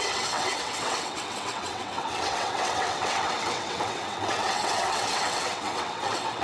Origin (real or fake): fake